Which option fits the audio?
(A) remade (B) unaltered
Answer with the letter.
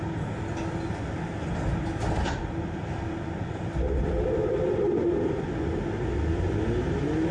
B